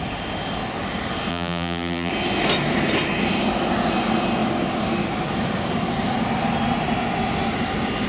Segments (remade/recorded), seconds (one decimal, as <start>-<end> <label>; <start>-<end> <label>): 0.0-1.3 recorded; 1.3-2.1 remade; 2.1-8.1 recorded